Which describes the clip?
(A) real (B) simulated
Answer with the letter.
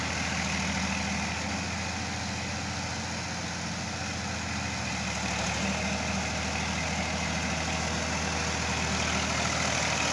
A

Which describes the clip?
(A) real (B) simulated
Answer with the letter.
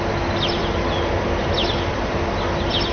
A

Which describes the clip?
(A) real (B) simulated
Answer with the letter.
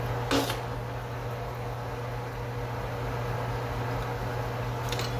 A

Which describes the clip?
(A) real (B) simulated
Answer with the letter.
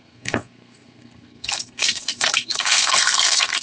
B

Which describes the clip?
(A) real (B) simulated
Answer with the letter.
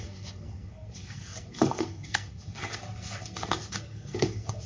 B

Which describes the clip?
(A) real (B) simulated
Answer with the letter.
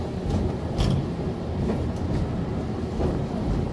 A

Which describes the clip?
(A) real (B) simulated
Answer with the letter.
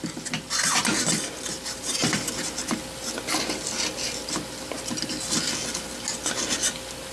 A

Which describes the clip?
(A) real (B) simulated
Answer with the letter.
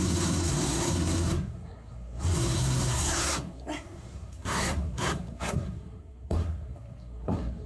B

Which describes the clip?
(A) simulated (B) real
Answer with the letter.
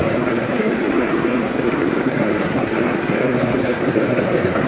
A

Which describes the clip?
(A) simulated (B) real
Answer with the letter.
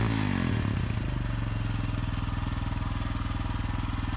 B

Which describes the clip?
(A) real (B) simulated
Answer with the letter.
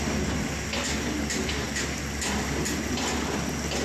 A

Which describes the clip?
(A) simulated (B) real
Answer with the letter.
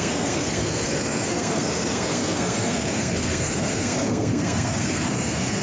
A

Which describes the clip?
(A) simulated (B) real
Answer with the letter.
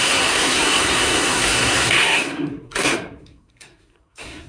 A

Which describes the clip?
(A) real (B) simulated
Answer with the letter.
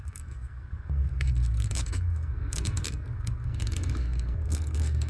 B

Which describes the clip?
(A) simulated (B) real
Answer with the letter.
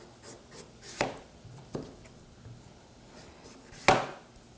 B